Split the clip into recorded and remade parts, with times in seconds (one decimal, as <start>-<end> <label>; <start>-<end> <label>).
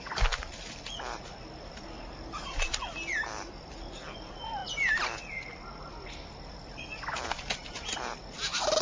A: 0.0-8.8 recorded